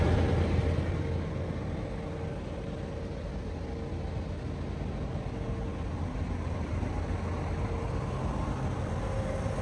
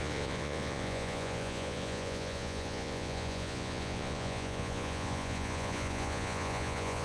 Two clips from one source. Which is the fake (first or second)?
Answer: second